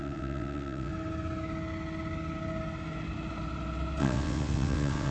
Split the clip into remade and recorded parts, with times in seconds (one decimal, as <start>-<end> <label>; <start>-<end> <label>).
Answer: 0.0-0.9 remade; 0.9-4.0 recorded; 4.0-5.1 remade